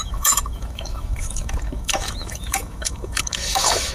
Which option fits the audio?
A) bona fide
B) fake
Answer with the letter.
B